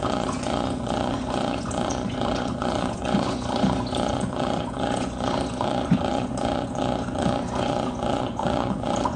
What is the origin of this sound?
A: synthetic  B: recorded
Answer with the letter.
A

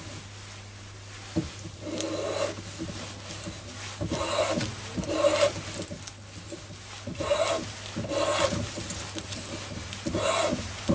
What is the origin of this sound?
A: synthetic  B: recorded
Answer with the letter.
B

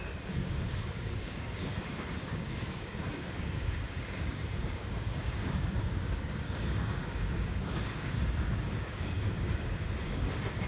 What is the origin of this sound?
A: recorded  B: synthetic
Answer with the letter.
B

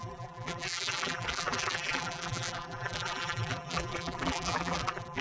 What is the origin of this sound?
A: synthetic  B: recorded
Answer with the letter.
A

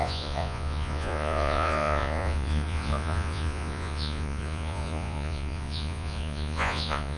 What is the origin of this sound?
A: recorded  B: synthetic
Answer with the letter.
B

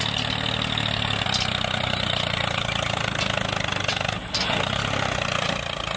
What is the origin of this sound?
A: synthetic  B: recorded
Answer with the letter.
B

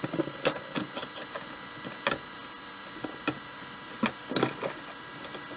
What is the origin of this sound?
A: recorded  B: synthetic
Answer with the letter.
A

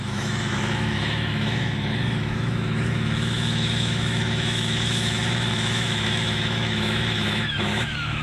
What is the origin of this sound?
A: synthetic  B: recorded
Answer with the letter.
A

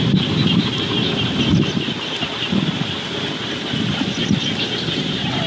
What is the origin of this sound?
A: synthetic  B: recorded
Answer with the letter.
B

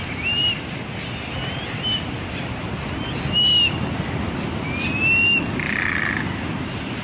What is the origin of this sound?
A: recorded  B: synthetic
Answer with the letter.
A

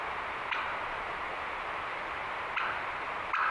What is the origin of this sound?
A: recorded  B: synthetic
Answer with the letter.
B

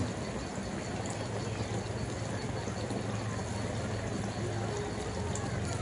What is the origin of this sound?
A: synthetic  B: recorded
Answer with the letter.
B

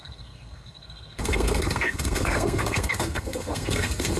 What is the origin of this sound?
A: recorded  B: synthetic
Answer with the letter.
B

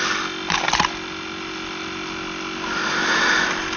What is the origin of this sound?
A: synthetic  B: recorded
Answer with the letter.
B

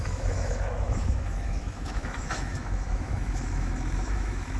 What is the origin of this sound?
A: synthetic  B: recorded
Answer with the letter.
A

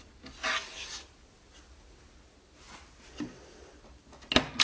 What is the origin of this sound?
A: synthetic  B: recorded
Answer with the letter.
B